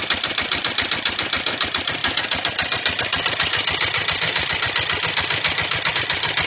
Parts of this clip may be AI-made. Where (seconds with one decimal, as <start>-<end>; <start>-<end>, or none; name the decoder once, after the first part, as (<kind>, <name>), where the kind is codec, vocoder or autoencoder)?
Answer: none